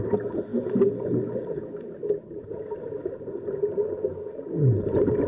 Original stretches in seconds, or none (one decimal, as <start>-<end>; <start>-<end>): 0.0-5.3